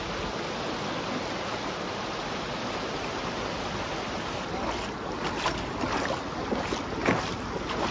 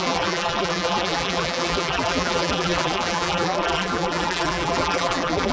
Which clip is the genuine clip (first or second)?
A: first